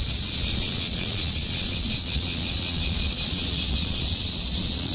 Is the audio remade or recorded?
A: remade